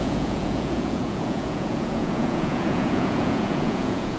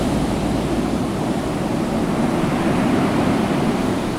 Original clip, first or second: second